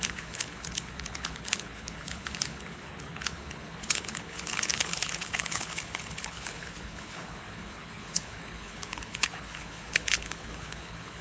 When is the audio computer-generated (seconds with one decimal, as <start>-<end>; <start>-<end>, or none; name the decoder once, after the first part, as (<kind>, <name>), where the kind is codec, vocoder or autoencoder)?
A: 0.0-11.2 (codec, HILCodec)